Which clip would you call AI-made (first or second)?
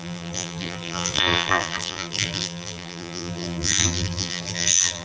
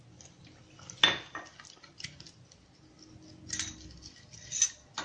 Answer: first